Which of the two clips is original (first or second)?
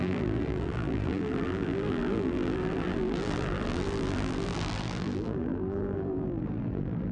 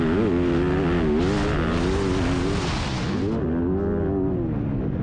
second